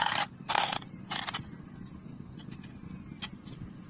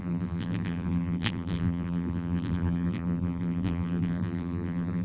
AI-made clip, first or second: second